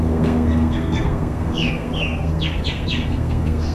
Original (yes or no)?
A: no